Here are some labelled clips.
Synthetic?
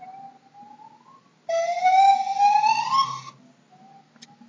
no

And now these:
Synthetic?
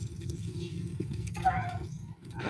yes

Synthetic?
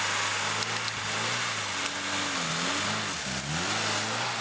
no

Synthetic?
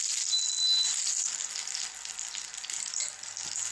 no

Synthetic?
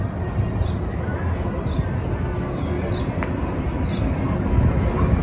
yes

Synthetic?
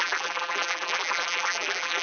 yes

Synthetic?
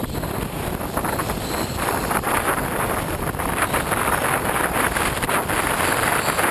yes